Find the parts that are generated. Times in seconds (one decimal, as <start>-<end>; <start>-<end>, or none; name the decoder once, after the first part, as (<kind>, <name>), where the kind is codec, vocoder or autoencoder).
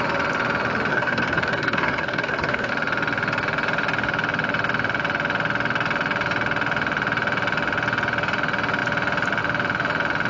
0.9-2.7 (codec, SNAC)